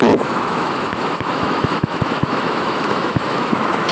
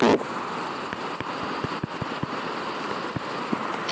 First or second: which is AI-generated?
first